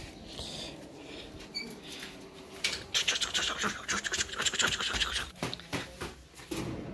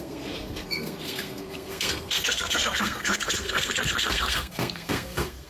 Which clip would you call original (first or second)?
first